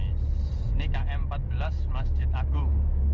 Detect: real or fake real